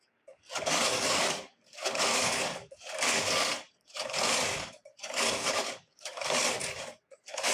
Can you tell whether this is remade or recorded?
remade